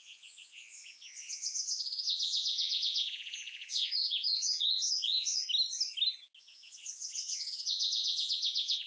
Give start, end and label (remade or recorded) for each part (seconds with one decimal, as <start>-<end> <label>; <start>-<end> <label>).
0.0-5.4 remade; 5.4-6.4 recorded; 6.4-8.9 remade